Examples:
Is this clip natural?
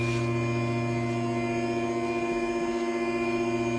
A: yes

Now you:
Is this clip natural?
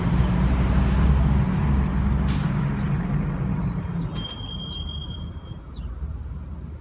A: yes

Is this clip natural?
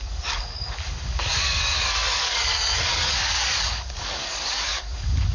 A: no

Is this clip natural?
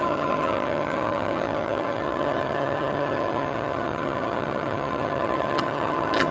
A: no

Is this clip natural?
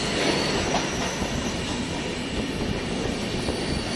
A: yes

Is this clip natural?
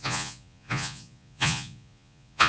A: no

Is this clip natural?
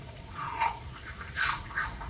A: no